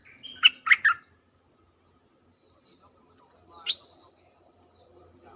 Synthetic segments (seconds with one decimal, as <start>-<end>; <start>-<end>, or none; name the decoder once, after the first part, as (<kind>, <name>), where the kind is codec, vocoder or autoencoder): 3.2-5.4 (vocoder, BigVGAN v2)